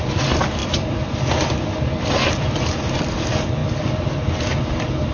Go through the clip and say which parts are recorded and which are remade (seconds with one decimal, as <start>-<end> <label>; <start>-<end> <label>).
0.0-5.1 recorded